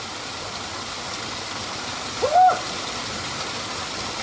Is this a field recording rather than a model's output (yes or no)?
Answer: no